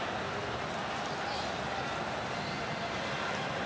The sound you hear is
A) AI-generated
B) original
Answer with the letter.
B